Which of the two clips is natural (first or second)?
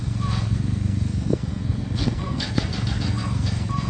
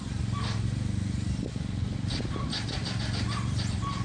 second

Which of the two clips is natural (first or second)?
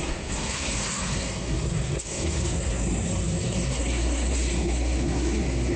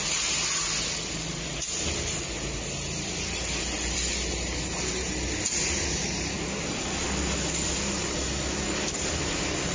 second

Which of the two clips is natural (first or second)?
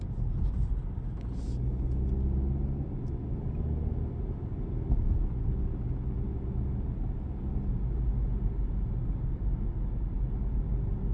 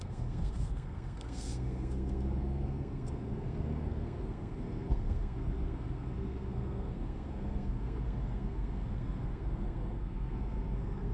first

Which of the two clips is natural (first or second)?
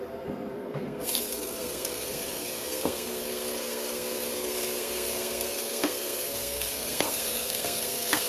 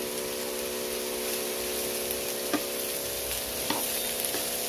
second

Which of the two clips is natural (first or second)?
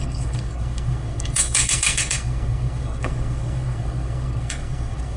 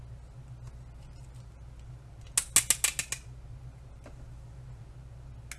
second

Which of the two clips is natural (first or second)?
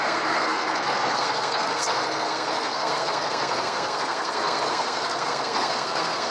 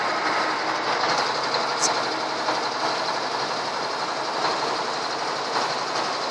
second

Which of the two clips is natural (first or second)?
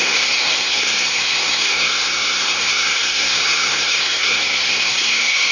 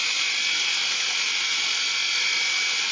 second